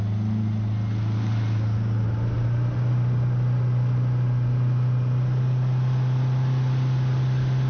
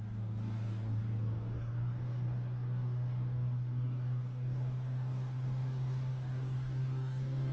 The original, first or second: first